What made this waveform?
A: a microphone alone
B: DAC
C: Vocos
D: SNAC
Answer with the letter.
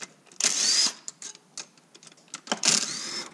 A